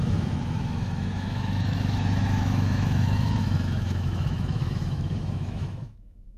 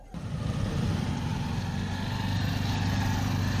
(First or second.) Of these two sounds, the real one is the second